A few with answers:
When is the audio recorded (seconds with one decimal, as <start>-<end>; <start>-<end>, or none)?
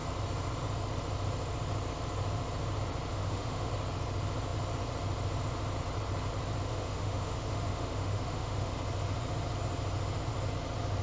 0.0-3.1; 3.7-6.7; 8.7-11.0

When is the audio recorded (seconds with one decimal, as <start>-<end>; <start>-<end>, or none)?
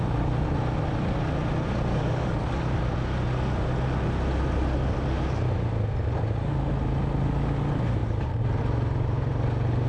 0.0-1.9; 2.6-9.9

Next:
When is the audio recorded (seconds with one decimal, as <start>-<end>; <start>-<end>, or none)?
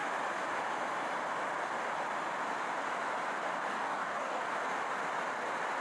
0.0-3.7; 4.4-5.8